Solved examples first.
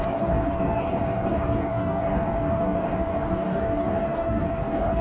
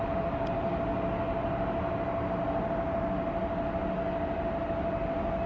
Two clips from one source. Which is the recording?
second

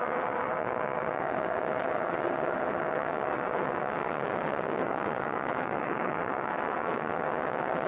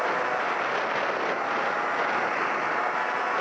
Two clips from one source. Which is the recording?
second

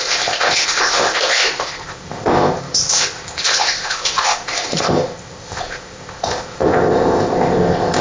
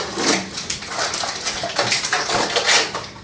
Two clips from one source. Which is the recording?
second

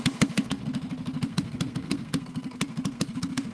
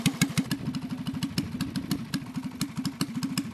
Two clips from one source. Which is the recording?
second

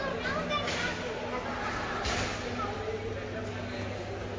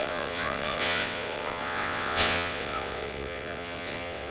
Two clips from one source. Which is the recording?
first